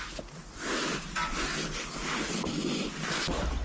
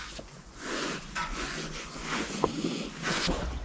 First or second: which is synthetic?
second